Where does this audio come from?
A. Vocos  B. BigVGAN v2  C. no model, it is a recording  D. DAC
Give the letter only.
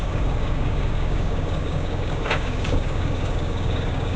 D